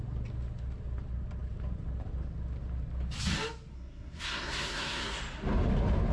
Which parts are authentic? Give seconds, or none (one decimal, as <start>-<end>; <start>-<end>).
0.0-3.7; 5.2-6.1